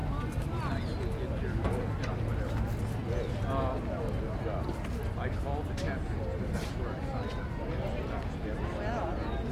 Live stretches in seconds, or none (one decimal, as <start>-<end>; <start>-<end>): 0.0-9.5